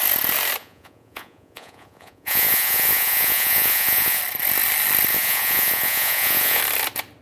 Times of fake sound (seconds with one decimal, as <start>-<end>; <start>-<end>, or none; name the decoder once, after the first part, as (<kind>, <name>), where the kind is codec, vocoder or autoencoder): 0.6-4.2 (vocoder, Vocos); 5.1-6.6